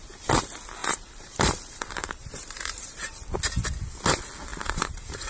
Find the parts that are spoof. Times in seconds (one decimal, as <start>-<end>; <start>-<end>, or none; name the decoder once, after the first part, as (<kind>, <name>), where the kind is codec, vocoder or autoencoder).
0.8-3.1 (vocoder, BigVGAN v2); 4.5-5.3

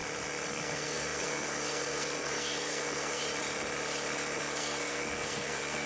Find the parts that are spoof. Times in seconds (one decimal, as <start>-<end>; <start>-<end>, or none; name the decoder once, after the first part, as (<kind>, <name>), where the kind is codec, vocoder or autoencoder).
0.5-3.2 (codec, SNAC); 4.4-5.9